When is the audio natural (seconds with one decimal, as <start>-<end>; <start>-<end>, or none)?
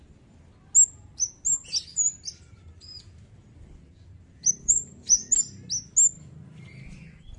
0.0-1.9; 5.2-7.4